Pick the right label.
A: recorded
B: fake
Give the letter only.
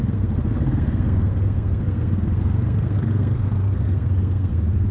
B